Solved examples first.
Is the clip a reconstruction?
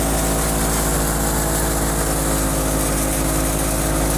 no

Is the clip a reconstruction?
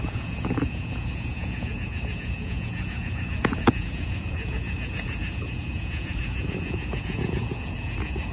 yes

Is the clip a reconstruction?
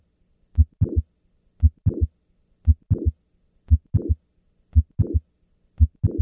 no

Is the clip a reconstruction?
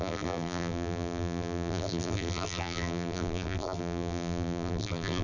yes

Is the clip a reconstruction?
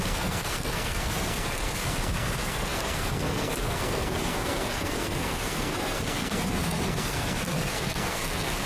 yes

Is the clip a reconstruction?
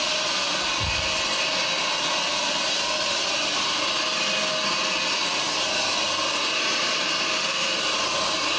no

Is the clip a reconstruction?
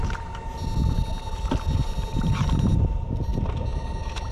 no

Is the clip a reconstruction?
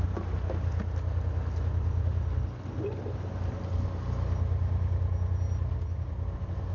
no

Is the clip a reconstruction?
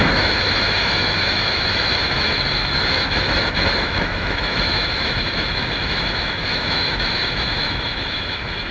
yes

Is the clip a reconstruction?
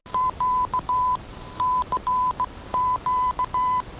no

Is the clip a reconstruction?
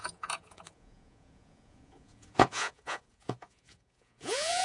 yes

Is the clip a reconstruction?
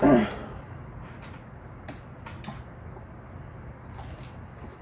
no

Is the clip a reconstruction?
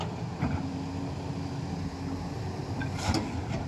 no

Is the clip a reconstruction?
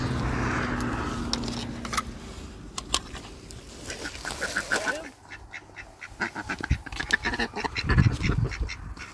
no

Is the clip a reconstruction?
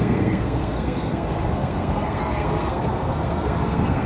yes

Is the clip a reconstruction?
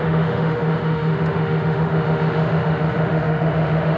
yes